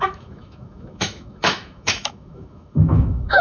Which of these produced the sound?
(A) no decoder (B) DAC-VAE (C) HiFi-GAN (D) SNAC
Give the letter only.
B